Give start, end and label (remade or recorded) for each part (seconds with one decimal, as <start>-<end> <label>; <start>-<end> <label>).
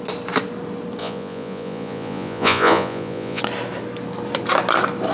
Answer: 0.0-1.0 recorded; 1.0-3.4 remade; 3.4-5.1 recorded